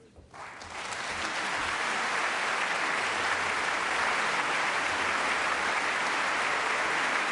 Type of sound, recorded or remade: recorded